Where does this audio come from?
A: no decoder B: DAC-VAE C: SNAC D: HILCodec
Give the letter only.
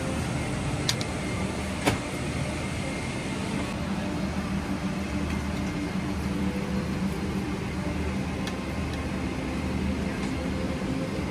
A